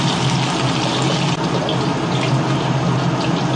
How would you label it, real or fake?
real